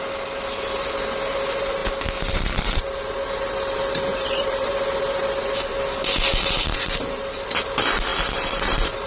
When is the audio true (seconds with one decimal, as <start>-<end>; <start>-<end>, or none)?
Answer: 0.0-4.1; 4.8-9.1